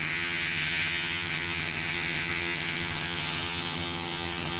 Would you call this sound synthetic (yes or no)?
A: yes